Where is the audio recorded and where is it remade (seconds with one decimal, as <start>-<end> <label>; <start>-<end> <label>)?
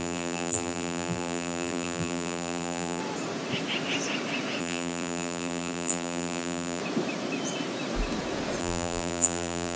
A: 0.0-3.0 remade; 3.0-4.6 recorded; 4.6-6.8 remade; 6.8-8.6 recorded; 8.6-9.8 remade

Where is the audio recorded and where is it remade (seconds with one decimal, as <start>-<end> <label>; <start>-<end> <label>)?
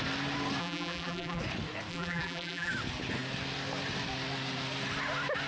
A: 0.0-0.6 recorded; 0.6-1.4 remade; 1.4-1.9 recorded; 1.9-2.7 remade; 2.7-5.5 recorded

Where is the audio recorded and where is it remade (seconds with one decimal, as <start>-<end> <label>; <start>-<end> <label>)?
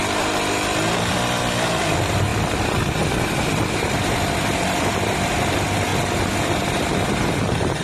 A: 0.0-5.9 remade; 5.9-6.8 recorded; 6.8-7.8 remade